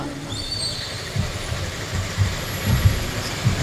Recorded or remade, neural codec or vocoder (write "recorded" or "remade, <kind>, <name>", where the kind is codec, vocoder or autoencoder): remade, vocoder, BigVGAN v2